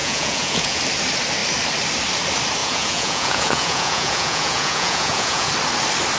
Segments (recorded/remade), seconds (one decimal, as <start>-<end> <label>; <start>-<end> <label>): 0.0-0.8 remade; 0.8-2.6 recorded; 2.6-5.5 remade; 5.5-6.2 recorded